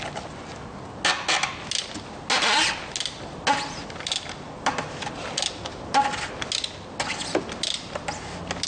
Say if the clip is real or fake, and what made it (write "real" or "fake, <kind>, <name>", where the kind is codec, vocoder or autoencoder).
real